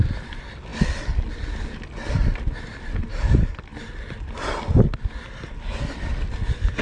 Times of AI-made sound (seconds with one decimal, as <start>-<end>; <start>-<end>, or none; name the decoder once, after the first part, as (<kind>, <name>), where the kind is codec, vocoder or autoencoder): none